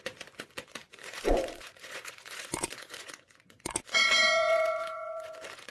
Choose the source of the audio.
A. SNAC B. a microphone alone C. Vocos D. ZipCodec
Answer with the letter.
C